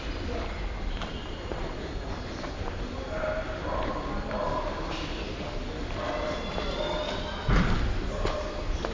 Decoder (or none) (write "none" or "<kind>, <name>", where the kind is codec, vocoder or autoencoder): none